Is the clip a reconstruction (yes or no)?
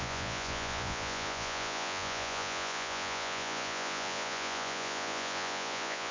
yes